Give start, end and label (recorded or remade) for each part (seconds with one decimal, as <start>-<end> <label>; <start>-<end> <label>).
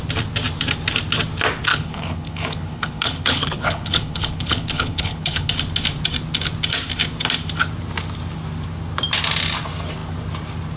0.0-1.7 recorded; 1.7-5.5 remade; 5.5-10.8 recorded